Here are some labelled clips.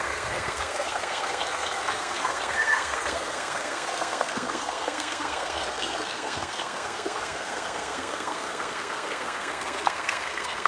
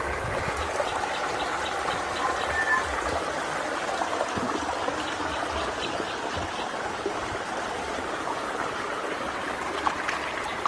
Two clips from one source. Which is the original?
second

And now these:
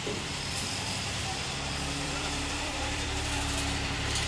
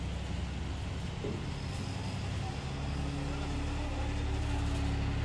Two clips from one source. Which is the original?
second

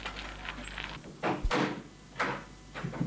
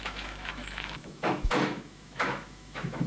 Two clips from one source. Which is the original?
first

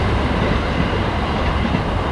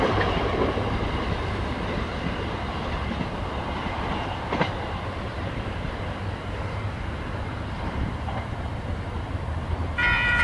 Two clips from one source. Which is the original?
first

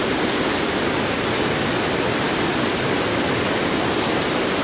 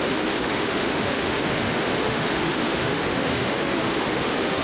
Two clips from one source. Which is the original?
first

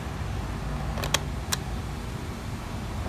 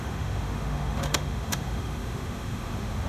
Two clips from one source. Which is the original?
first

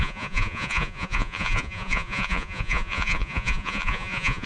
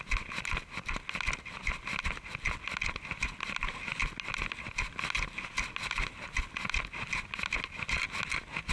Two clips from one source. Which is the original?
second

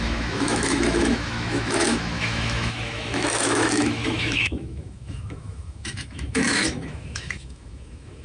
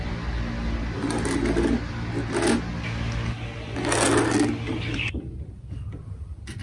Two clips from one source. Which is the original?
second